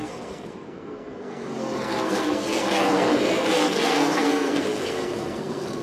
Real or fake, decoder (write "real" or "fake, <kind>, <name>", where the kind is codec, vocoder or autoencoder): fake, codec, SNAC